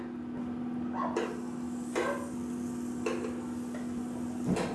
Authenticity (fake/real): real